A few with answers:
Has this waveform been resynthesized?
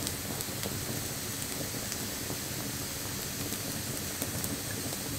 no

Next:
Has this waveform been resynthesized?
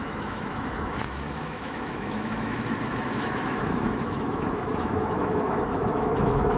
yes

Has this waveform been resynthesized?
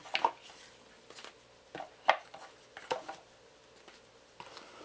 no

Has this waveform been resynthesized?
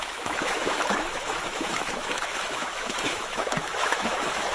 yes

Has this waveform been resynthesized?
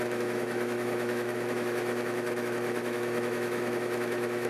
yes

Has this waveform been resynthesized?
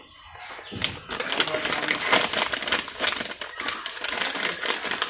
no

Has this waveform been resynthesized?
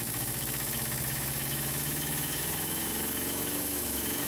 yes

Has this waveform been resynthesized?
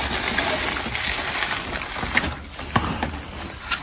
no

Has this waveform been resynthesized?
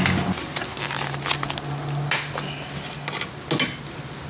no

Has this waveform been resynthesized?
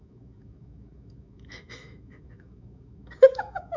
yes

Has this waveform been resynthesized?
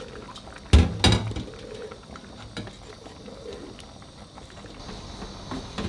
no